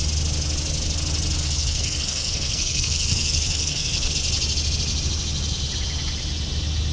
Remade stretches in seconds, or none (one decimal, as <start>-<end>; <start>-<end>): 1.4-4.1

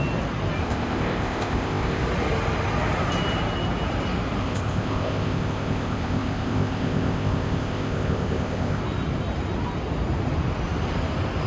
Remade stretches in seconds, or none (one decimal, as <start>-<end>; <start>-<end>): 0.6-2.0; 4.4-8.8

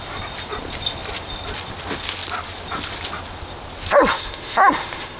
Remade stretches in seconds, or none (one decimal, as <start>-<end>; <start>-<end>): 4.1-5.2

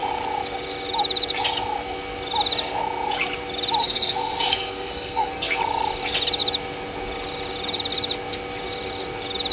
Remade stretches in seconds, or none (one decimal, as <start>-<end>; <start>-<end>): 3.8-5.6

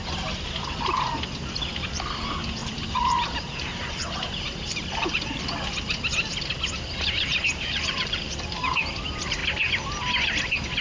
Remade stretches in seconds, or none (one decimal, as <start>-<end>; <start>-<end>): 2.6-5.4; 7.3-8.9

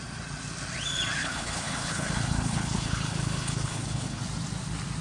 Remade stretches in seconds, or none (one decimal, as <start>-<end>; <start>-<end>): 1.2-4.2

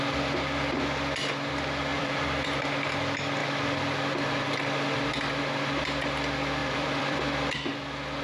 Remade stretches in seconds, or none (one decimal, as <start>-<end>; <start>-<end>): 1.9-2.6; 6.6-7.2

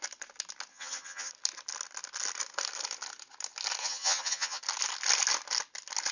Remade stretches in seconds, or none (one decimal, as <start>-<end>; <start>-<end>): 0.7-1.3; 3.8-4.6